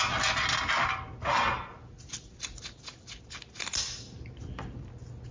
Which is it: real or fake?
real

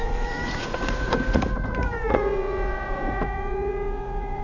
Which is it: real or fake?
fake